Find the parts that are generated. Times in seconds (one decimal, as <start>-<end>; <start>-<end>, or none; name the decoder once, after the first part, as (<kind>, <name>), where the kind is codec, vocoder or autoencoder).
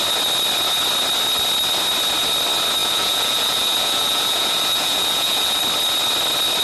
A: 2.8-5.6 (vocoder, Vocos)